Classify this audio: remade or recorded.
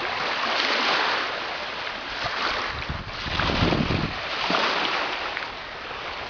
recorded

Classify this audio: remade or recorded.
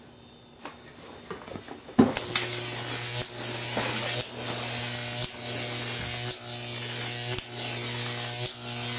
recorded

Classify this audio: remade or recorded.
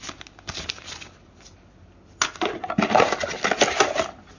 recorded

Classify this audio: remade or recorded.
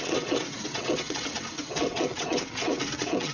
remade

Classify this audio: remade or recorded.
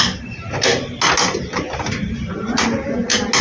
recorded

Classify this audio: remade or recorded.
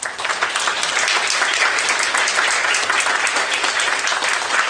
recorded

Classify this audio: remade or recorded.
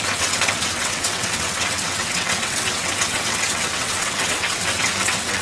remade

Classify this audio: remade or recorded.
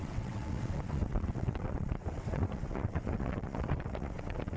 remade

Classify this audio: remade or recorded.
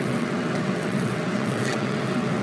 remade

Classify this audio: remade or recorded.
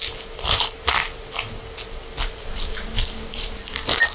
recorded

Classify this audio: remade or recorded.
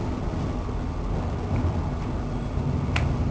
recorded